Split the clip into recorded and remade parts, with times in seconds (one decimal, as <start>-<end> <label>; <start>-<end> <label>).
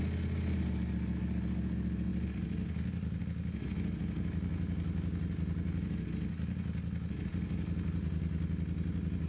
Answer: 0.0-9.3 recorded